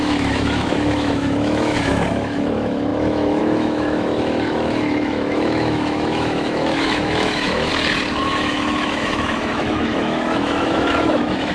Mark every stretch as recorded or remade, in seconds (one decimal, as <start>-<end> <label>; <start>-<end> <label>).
0.0-7.7 remade; 7.7-8.2 recorded; 8.2-11.5 remade